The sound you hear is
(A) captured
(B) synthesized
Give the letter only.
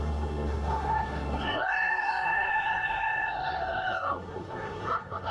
B